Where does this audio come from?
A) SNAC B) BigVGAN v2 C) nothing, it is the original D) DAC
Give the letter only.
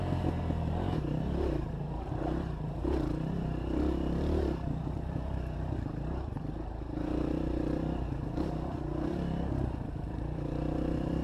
B